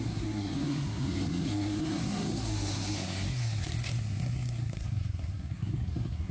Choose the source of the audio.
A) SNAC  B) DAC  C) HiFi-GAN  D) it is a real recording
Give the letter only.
A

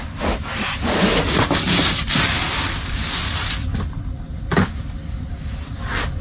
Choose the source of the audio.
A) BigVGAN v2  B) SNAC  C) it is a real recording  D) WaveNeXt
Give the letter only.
C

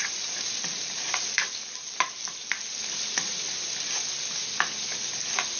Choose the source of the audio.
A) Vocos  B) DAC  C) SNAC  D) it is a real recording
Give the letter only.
D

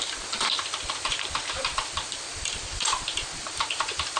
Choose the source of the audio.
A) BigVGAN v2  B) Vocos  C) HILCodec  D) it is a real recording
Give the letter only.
A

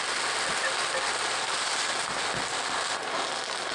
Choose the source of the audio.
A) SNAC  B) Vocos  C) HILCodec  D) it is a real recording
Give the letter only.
D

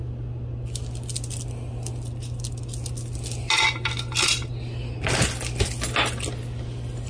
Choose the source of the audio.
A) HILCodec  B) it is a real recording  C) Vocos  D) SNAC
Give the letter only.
B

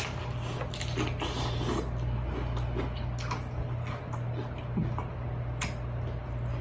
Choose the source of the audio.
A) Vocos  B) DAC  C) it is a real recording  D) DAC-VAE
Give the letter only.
C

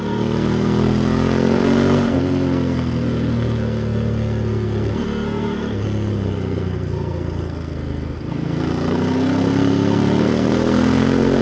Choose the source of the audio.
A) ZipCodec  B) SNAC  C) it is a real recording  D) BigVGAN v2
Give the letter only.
B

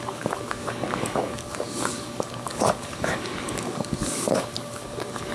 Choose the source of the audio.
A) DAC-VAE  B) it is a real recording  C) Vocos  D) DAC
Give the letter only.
D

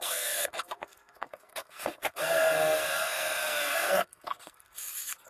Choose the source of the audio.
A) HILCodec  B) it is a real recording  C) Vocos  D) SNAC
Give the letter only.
D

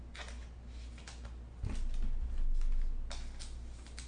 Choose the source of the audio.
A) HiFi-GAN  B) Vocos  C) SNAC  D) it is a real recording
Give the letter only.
D